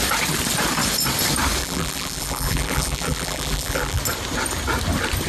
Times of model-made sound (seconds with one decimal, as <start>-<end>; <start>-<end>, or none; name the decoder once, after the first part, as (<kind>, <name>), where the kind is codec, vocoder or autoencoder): 1.6-4.0 (vocoder, BigVGAN v2)